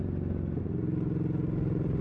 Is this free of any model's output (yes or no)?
yes